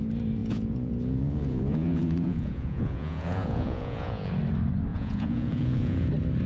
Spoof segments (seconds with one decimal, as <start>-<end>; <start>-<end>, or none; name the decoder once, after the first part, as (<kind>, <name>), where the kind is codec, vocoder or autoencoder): 0.4-4.3 (vocoder, Vocos); 4.9-6.1